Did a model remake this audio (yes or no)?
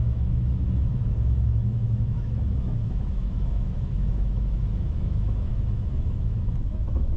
yes